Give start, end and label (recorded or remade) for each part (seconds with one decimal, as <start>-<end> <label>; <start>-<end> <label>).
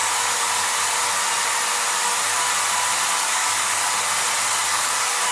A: 0.0-3.2 recorded; 3.2-3.8 remade; 3.8-4.7 recorded; 4.7-5.3 remade